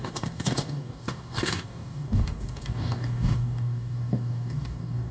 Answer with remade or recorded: remade